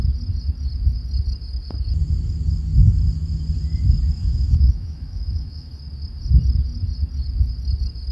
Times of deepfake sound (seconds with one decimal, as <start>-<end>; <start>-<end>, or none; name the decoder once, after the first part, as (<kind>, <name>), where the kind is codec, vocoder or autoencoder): 4.2-5.7 (autoencoder, DAC-VAE)